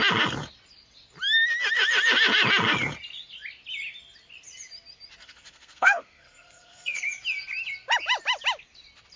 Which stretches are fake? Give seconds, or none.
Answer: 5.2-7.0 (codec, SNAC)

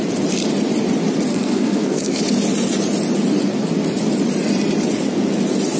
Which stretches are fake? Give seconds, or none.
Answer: 1.3-2.2 (codec, SNAC)

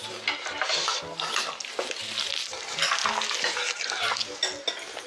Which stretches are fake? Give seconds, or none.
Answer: none

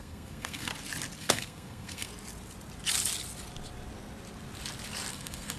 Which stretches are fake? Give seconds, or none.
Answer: 0.0-0.7 (codec, SNAC); 1.2-2.1; 5.1-5.6